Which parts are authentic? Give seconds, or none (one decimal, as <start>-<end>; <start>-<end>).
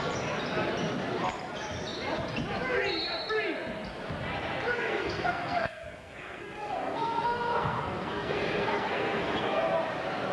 0.0-4.7; 9.6-10.3